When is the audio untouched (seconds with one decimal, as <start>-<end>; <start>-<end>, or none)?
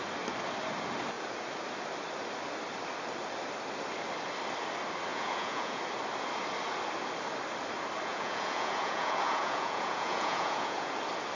0.0-5.1; 5.8-8.1; 10.9-11.4